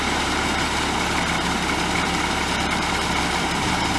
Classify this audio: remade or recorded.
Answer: remade